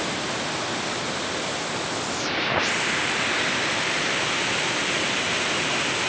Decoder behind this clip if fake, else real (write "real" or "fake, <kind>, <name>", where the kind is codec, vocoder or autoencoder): real